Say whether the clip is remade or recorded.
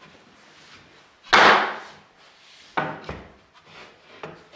recorded